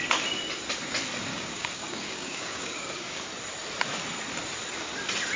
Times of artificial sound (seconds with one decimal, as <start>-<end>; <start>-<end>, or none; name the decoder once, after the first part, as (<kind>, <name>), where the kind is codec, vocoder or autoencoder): 1.3-3.2 (codec, DAC)